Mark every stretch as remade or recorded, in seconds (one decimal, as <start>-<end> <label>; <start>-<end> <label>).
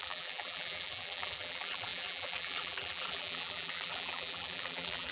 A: 0.0-5.1 remade